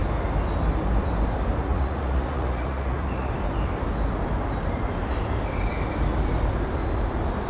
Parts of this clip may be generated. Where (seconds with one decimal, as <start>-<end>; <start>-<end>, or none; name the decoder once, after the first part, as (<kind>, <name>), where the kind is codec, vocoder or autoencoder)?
1.6-3.3 (vocoder, Vocos)

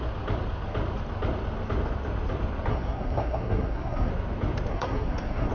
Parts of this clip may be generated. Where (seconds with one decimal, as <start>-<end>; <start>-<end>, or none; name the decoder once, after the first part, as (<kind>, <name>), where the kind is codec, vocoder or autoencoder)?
2.7-4.1 (codec, SNAC); 4.7-5.5

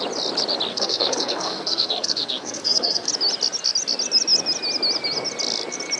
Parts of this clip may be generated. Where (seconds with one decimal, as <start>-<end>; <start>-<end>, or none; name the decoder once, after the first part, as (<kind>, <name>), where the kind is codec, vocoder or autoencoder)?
0.7-3.1 (codec, SNAC)

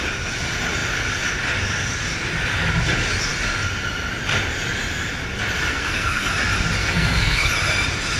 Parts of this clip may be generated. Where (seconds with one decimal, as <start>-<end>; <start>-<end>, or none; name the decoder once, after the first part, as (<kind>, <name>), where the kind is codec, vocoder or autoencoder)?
5.7-6.3 (codec, SNAC); 6.8-7.5

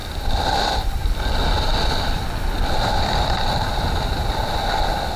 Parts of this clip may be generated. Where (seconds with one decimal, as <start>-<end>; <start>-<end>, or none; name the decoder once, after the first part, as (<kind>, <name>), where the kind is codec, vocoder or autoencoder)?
none

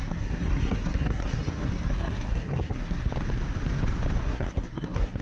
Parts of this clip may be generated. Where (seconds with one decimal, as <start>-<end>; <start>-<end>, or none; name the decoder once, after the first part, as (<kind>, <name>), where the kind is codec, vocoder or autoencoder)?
0.0-3.1 (codec, SNAC); 4.2-5.2

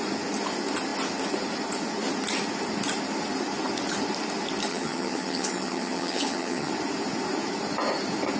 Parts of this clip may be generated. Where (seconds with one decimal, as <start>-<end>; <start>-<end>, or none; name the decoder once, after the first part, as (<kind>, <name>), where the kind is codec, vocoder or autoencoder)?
4.7-6.7 (vocoder, HiFi-GAN)